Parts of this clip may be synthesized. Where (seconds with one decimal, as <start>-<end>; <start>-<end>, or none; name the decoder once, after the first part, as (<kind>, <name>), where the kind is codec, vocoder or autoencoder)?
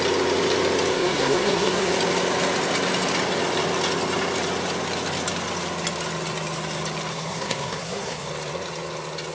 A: 0.9-1.9 (codec, SNAC); 7.1-8.3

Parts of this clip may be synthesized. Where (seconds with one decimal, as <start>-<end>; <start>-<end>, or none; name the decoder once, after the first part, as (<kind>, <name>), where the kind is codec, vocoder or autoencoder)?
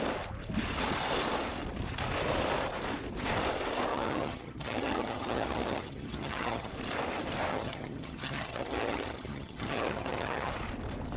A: 3.9-6.7 (vocoder, HiFi-GAN); 7.5-10.5